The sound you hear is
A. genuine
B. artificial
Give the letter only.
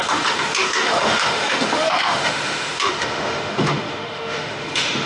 B